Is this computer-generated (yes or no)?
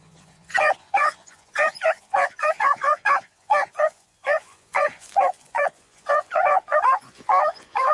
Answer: yes